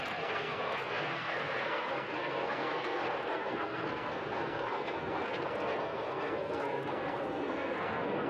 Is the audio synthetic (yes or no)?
yes